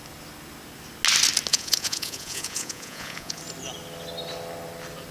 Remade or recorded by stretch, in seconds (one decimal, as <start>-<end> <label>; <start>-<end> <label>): 0.0-1.5 recorded; 1.5-3.4 remade; 3.4-5.1 recorded